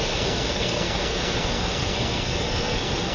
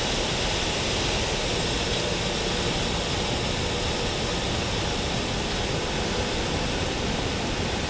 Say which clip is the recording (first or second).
second